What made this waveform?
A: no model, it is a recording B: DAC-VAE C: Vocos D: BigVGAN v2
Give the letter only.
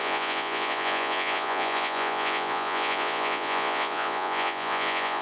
C